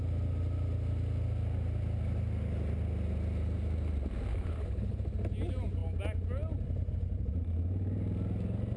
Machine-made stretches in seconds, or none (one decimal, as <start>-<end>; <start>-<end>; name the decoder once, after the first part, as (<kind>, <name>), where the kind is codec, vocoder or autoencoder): 4.3-5.0 (codec, HILCodec)